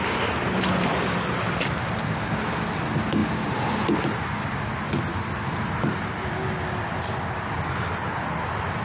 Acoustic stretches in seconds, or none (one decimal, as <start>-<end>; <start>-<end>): 0.0-8.8